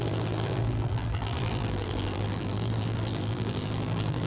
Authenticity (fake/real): fake